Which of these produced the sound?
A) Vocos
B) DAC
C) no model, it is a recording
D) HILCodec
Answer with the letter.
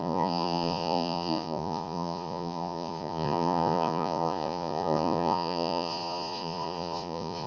A